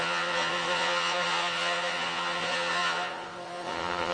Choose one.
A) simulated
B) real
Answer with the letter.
A